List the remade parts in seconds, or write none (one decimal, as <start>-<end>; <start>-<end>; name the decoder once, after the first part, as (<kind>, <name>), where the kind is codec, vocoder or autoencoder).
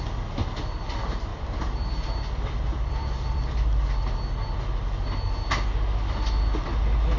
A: 1.3-3.5 (vocoder, BigVGAN v2)